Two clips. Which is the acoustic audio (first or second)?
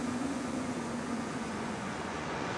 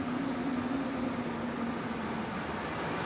second